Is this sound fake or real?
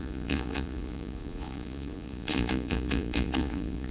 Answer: fake